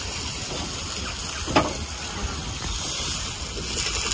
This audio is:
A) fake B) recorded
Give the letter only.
B